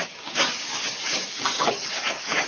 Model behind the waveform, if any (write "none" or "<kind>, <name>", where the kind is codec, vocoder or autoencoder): codec, DAC